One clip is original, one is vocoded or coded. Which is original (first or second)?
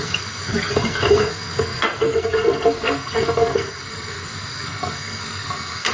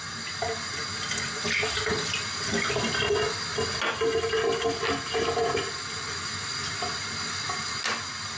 second